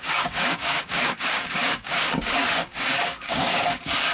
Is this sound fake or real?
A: fake